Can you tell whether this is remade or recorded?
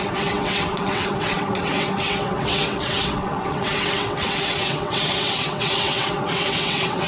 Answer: remade